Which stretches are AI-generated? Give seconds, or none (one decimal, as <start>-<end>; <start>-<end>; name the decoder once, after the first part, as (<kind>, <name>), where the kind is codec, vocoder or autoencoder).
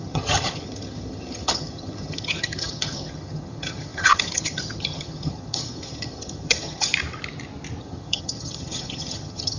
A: 0.0-6.9 (vocoder, HiFi-GAN); 7.8-9.6